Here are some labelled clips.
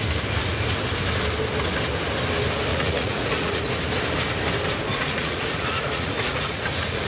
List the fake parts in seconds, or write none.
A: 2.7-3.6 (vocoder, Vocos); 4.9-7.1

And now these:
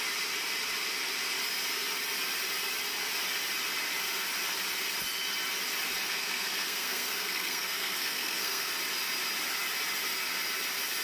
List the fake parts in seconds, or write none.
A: 6.1-8.7 (codec, SNAC)

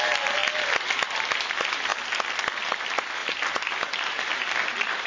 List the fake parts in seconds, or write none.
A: none

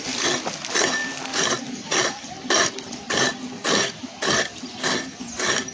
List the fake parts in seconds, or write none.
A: 3.6-5.2 (vocoder, BigVGAN v2)

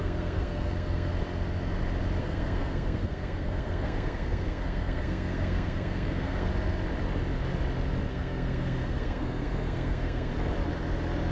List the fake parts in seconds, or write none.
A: 0.0-1.1 (codec, SNAC); 2.2-6.5; 8.1-10.3

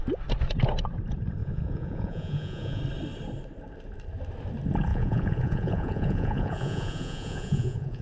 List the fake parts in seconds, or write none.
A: 1.4-2.8 (vocoder, Vocos); 4.9-8.0

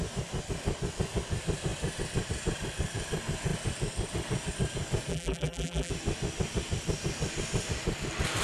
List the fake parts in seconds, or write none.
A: 5.1-5.9 (vocoder, BigVGAN v2)